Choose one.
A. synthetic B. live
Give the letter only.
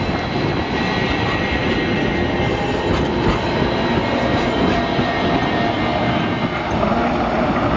B